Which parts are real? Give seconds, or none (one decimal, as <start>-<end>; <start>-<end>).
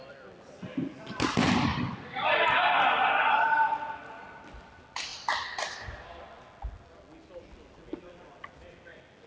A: 0.0-9.3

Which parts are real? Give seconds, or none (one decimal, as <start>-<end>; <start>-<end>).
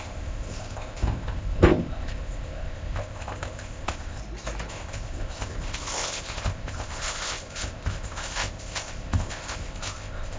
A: 4.2-4.7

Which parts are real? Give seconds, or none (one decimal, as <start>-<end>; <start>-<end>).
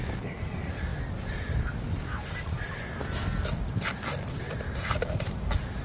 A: 0.0-5.8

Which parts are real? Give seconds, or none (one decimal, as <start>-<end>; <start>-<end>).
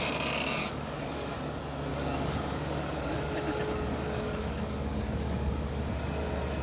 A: 0.0-0.6; 1.3-1.9; 5.9-6.6